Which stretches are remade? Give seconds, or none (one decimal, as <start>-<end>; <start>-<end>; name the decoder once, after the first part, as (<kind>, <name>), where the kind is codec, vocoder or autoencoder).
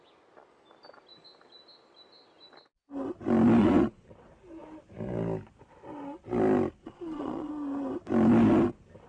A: 3.6-4.1 (vocoder, Vocos); 6.8-7.5